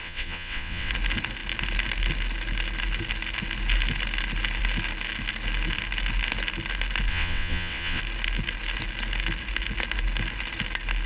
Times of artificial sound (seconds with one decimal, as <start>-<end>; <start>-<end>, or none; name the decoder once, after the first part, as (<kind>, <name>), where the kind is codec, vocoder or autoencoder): 0.0-0.9 (vocoder, WaveNeXt); 7.1-8.0